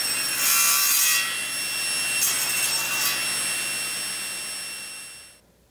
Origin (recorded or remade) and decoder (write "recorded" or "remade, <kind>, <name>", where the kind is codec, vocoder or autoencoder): recorded